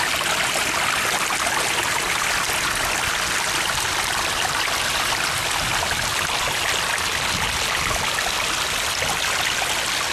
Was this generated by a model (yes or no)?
no